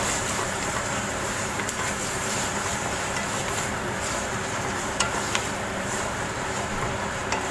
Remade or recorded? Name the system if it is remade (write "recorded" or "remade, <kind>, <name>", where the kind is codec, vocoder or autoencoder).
remade, vocoder, BigVGAN v2